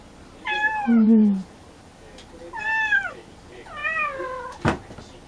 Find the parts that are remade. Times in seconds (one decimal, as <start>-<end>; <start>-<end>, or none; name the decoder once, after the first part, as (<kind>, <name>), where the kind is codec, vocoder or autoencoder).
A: 0.0-1.9 (vocoder, BigVGAN v2); 3.1-3.8